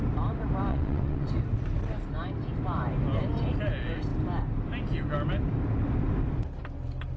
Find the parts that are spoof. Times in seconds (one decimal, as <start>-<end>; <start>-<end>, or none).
0.7-1.3